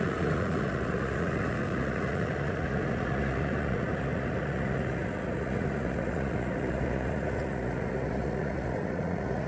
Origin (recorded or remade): remade